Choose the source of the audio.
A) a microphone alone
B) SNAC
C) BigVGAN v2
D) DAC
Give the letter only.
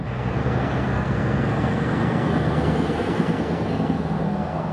B